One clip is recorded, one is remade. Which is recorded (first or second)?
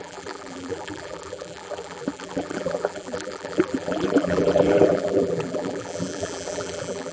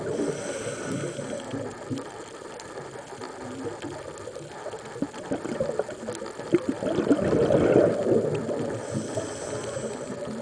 second